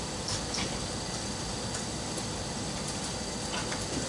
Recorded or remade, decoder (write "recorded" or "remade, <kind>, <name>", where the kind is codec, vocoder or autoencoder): recorded